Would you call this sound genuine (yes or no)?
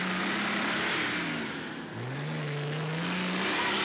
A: yes